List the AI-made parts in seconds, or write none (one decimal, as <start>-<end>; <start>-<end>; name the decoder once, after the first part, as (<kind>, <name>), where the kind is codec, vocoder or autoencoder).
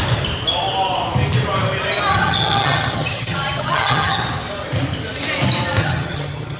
2.1-4.2 (vocoder, HiFi-GAN); 5.8-6.6